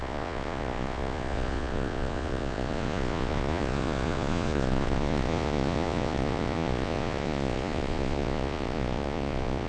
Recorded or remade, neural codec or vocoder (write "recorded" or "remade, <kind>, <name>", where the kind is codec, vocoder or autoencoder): remade, vocoder, Vocos